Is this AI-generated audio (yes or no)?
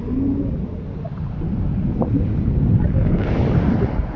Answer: no